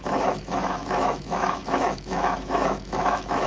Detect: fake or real fake